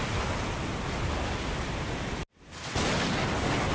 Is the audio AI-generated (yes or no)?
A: no